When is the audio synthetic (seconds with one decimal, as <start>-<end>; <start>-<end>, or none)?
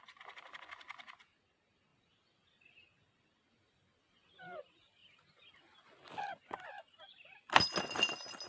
none